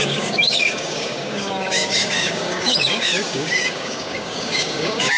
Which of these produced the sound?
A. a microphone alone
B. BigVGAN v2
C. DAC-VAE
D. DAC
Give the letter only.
D